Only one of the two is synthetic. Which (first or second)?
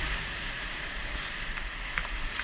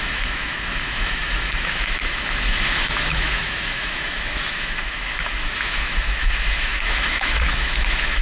second